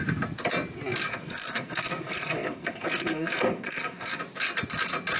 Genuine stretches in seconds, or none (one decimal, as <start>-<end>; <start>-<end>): 0.0-1.1; 4.2-5.2